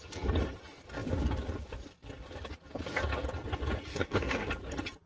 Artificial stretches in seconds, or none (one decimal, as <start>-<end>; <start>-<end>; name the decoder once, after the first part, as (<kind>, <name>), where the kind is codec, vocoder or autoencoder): 3.9-4.5 (codec, SNAC)